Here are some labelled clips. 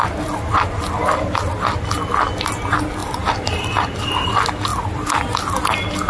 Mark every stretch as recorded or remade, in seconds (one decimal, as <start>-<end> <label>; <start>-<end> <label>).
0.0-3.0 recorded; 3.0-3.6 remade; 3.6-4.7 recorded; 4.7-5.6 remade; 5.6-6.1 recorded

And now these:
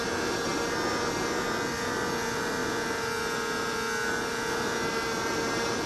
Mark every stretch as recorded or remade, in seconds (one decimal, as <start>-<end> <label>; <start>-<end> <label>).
0.0-5.9 recorded

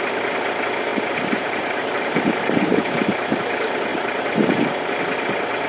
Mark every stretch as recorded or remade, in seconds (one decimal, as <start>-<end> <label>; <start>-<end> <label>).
0.0-0.9 recorded; 0.9-2.9 remade; 2.9-3.9 recorded; 3.9-5.0 remade; 5.0-5.7 recorded

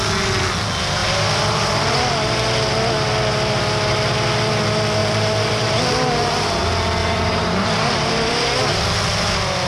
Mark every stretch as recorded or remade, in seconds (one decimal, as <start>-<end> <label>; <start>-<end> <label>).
0.0-1.0 recorded; 1.0-2.1 remade; 2.1-5.0 recorded; 5.0-6.6 remade; 6.6-7.0 recorded; 7.0-8.3 remade; 8.3-9.7 recorded